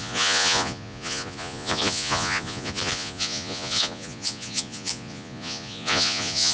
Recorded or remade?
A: remade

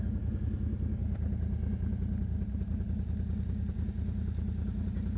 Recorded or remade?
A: recorded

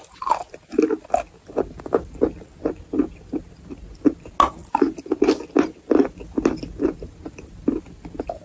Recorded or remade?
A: recorded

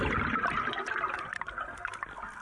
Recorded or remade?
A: recorded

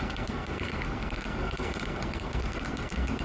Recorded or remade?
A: remade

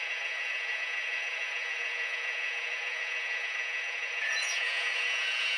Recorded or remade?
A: remade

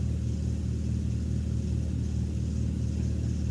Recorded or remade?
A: recorded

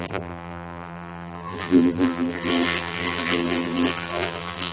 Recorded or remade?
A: remade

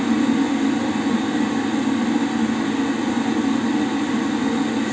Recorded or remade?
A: recorded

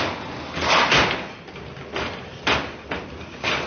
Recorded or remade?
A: recorded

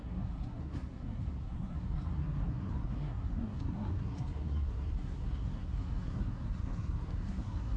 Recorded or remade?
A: remade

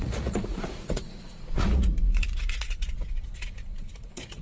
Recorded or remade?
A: remade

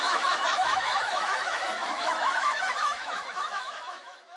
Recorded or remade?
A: remade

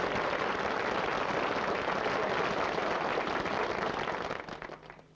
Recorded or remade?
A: recorded